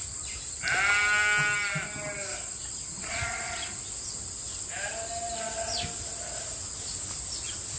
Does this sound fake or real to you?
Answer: real